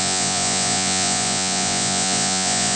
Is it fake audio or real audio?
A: fake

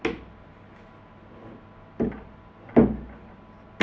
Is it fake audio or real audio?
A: real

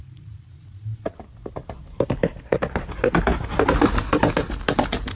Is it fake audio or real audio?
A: real